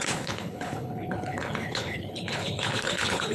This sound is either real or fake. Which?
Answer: fake